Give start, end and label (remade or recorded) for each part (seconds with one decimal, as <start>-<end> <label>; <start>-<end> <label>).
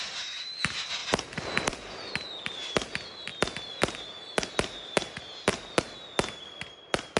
0.0-7.2 recorded